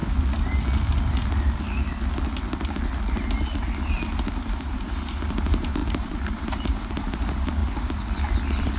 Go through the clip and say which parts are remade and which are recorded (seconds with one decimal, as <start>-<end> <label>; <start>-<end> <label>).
0.0-4.3 recorded; 4.3-7.6 remade; 7.6-8.8 recorded